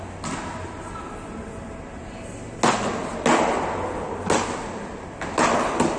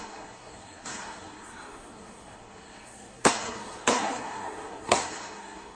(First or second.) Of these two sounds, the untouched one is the first